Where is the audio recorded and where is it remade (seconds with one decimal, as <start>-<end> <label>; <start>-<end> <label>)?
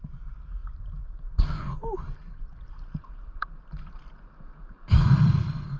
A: 0.0-0.6 recorded; 0.6-4.1 remade; 4.1-4.6 recorded; 4.6-5.3 remade; 5.3-5.8 recorded